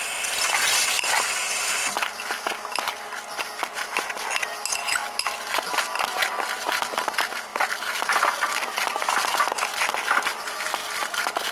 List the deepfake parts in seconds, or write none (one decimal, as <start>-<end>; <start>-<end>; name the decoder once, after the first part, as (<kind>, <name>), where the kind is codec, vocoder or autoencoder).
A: 10.8-11.5 (vocoder, BigVGAN v2)